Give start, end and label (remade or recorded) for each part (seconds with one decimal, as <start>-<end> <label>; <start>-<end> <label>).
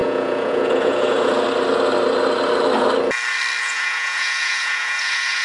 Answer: 0.0-1.3 remade; 1.3-3.6 recorded; 3.6-5.4 remade